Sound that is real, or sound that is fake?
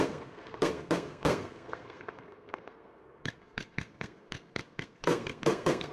fake